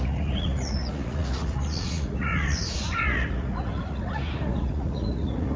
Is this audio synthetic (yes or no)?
yes